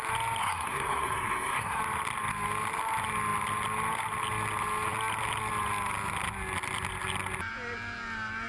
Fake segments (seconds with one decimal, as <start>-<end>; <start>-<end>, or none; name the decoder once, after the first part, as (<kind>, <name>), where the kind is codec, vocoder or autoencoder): 0.4-1.8 (codec, SNAC)